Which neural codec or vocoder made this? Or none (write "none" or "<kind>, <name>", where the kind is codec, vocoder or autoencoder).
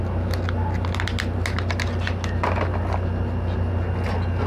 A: none